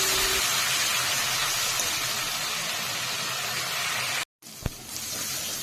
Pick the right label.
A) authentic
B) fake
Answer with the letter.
A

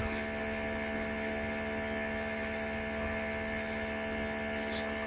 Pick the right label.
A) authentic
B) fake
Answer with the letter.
A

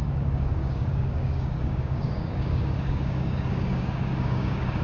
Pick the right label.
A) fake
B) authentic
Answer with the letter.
A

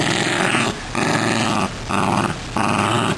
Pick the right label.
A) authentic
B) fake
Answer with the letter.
A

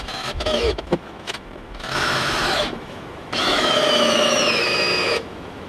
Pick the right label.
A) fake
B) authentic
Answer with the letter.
A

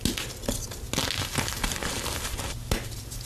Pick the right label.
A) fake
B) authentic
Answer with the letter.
B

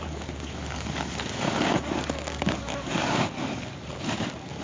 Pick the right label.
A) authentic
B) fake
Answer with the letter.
B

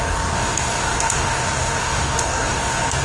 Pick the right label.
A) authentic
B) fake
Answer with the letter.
B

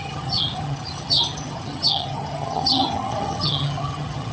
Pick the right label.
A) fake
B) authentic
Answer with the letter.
A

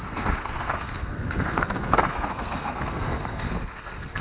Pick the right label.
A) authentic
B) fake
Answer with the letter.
B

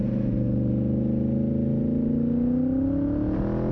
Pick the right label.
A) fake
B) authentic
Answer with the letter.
B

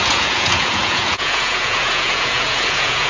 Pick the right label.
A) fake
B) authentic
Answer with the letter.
A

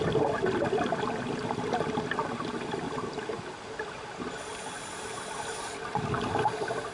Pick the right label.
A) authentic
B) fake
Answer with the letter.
A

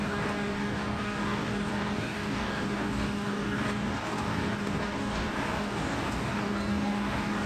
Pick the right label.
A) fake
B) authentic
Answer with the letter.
A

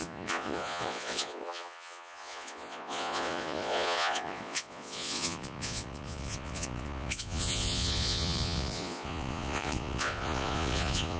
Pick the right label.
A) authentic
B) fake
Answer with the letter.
B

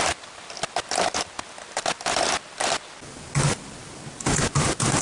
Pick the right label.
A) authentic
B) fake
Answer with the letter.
A